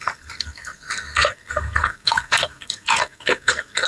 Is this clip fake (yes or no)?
yes